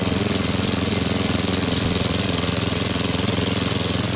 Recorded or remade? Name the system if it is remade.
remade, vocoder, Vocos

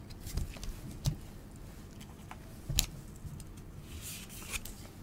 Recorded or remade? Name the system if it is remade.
recorded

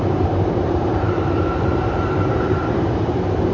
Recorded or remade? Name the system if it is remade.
remade, vocoder, BigVGAN v2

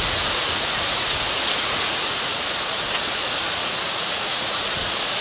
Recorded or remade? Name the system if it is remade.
remade, vocoder, Vocos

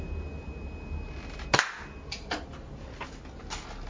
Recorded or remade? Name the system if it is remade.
recorded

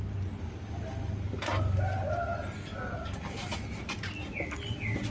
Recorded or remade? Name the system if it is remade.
recorded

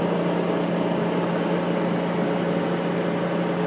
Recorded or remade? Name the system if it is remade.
recorded